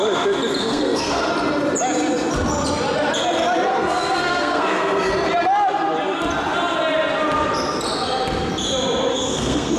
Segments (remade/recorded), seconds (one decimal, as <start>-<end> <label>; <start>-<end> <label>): 0.0-0.6 recorded; 0.6-1.3 remade; 1.3-3.7 recorded; 3.7-5.1 remade; 5.1-9.1 recorded; 9.1-9.8 remade

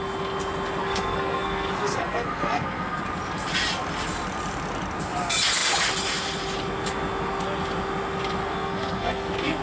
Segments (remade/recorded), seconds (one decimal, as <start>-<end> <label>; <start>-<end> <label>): 0.0-0.8 recorded; 0.8-3.0 remade; 3.0-8.4 recorded; 8.4-9.6 remade

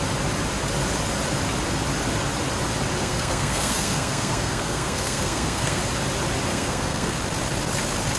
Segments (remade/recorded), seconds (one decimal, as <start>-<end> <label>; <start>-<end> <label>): 0.0-3.0 recorded; 3.0-5.8 remade; 5.8-6.5 recorded; 6.5-7.2 remade; 7.2-8.2 recorded

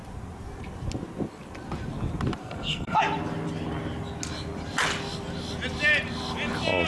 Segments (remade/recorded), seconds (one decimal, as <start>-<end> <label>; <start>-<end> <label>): 0.0-2.4 recorded; 2.4-3.0 remade; 3.0-6.9 recorded